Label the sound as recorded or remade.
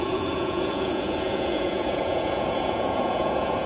remade